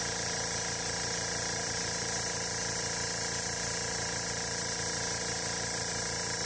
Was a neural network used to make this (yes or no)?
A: no